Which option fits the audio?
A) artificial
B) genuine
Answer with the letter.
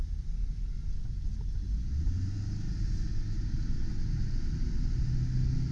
B